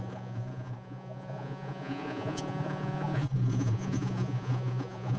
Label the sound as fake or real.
fake